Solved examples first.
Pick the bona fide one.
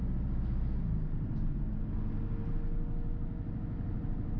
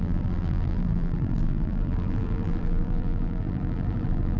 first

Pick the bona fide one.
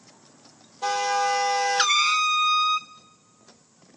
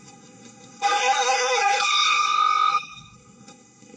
first